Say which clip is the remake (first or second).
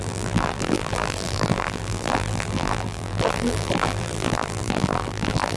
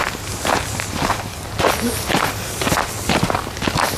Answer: first